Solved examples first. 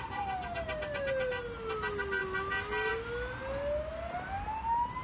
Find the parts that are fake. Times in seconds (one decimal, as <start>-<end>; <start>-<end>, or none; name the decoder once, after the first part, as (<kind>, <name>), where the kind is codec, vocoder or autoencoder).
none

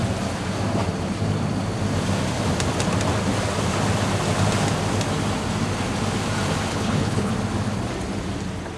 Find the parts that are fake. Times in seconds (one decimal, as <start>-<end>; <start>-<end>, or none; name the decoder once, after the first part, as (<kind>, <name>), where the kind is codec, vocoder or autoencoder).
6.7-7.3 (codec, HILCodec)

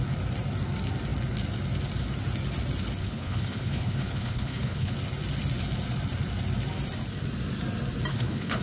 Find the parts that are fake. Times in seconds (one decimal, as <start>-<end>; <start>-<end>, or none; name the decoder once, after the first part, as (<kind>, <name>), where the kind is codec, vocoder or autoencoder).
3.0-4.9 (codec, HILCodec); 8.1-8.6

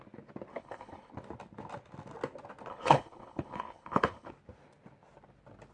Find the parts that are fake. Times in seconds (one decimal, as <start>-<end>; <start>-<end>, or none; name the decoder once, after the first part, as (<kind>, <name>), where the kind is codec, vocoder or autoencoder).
0.5-1.1 (codec, HILCodec); 2.7-4.3